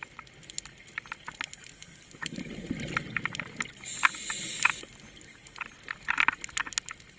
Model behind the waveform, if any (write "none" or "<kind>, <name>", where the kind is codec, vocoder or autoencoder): none